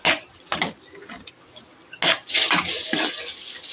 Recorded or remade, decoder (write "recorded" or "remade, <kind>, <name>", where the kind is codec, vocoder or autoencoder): recorded